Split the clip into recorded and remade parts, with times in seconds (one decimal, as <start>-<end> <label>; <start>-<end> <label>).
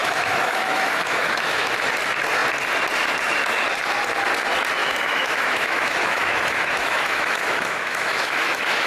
0.0-1.7 remade; 1.7-4.8 recorded; 4.8-8.9 remade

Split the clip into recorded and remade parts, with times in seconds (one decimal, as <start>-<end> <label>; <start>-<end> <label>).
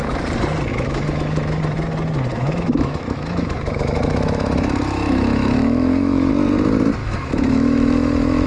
0.0-0.7 recorded; 0.7-1.6 remade; 1.6-2.3 recorded; 2.3-6.3 remade; 6.3-7.0 recorded; 7.0-8.5 remade